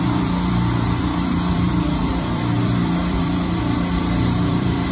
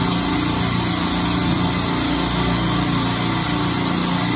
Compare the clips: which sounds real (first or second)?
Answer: second